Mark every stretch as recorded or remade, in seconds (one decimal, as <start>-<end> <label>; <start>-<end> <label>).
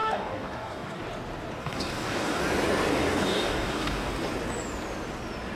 0.0-1.0 remade; 1.0-1.6 recorded; 1.6-2.4 remade; 2.4-2.9 recorded; 2.9-4.1 remade; 4.1-5.6 recorded